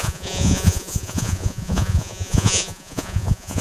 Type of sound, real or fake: fake